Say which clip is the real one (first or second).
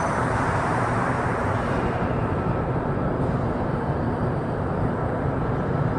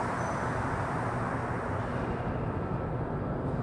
second